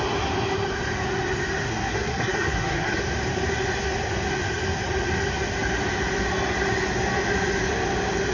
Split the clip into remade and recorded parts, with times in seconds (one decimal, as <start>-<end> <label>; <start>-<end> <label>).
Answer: 0.0-1.7 recorded; 1.7-3.0 remade; 3.0-8.3 recorded